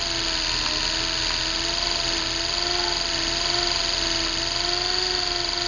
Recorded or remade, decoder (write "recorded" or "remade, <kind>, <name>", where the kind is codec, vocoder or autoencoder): recorded